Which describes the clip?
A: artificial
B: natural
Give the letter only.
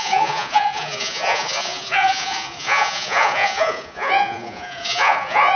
A